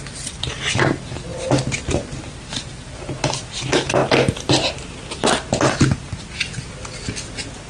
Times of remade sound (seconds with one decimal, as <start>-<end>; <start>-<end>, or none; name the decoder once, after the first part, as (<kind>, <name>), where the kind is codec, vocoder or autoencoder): none